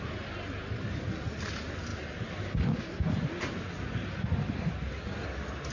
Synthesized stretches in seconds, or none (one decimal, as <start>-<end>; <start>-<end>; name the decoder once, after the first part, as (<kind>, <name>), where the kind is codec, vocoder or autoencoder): none